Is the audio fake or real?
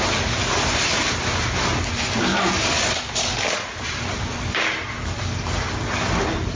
real